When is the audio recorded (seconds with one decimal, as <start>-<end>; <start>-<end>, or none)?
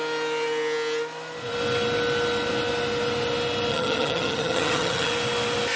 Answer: 0.0-3.7; 5.1-5.8